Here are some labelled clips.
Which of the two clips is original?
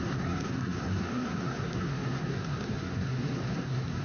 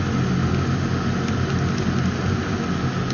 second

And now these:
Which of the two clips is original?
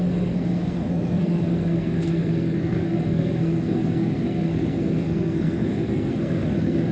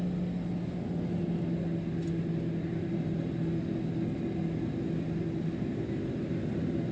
second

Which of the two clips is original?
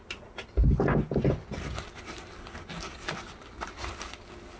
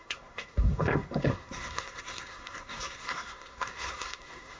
first